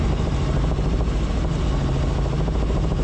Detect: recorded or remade recorded